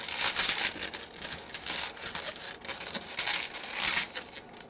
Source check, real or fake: real